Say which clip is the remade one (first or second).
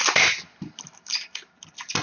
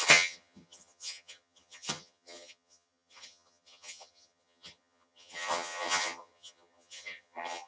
second